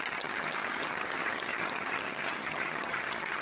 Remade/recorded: remade